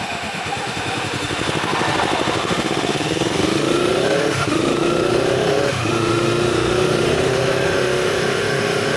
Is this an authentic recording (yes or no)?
no